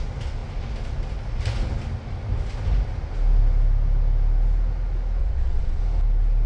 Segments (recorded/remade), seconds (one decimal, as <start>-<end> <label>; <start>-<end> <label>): 0.0-5.2 recorded; 5.2-5.8 remade; 5.8-6.5 recorded